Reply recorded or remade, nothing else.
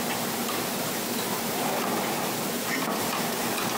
recorded